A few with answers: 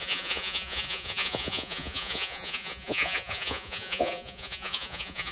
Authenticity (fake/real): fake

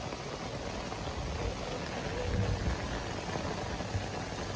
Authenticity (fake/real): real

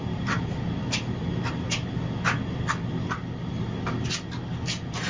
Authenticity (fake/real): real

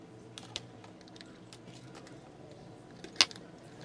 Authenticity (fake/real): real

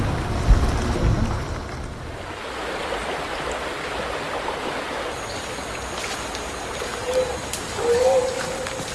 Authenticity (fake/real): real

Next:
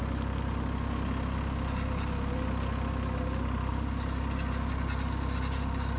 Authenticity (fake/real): real